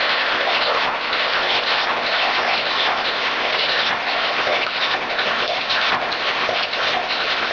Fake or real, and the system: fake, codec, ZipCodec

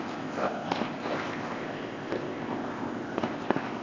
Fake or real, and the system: fake, codec, ZipCodec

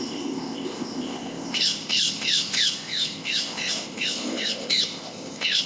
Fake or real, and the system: fake, codec, ZipCodec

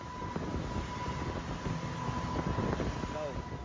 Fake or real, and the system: real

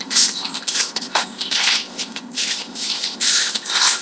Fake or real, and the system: fake, codec, ZipCodec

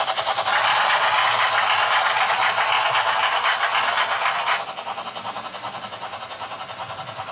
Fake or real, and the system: real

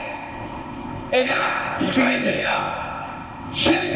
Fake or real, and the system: fake, codec, ZipCodec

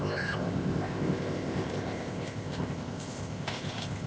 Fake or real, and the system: fake, codec, ZipCodec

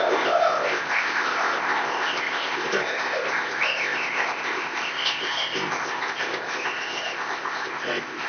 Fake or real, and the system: fake, codec, ZipCodec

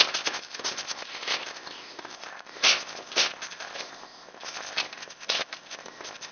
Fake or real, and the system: fake, codec, ZipCodec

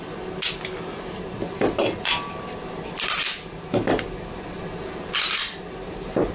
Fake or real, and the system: real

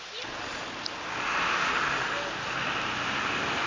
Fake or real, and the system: real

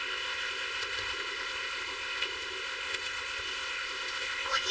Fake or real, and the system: fake, codec, ZipCodec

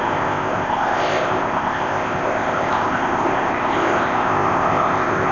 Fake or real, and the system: fake, codec, ZipCodec